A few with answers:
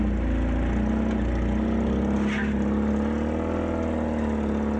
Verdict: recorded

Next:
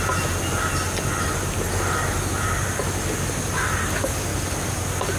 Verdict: recorded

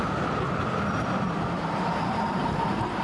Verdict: recorded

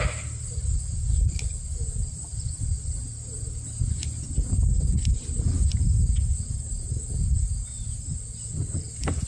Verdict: recorded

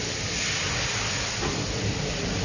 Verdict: recorded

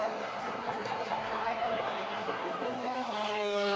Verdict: remade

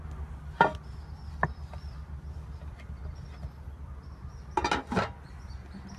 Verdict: recorded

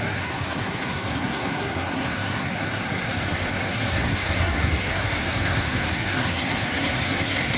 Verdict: remade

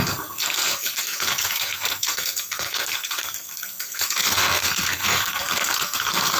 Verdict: remade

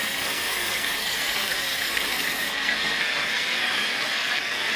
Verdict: remade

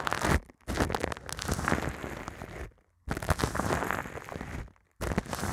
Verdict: recorded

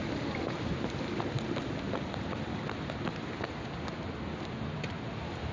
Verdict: recorded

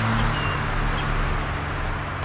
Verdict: recorded